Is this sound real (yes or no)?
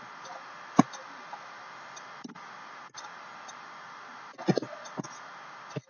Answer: yes